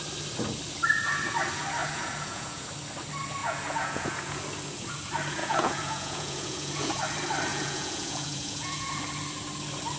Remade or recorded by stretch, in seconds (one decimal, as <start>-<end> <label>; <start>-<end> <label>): 0.0-1.8 recorded; 1.8-2.7 remade; 2.7-3.4 recorded; 3.4-4.4 remade; 4.4-5.4 recorded; 5.4-7.0 remade; 7.0-7.5 recorded; 7.5-8.9 remade; 8.9-10.0 recorded